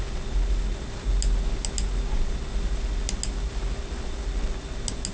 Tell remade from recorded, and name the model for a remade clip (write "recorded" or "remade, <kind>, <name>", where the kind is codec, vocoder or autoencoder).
recorded